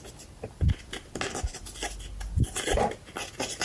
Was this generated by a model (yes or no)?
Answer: no